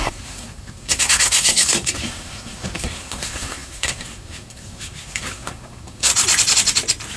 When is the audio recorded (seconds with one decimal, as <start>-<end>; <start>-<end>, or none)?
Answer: 6.1-7.2